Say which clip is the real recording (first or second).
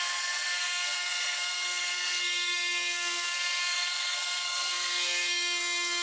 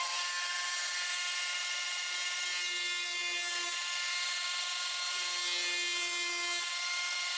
second